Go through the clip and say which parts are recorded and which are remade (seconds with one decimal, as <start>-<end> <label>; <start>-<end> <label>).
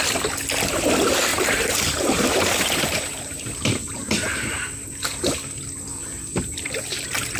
0.0-1.3 recorded; 1.3-4.6 remade; 4.6-7.4 recorded